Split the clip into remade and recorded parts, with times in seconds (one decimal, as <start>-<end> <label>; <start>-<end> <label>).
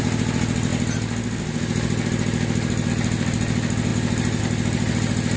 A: 0.0-5.4 recorded